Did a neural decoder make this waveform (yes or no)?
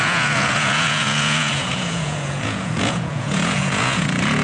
yes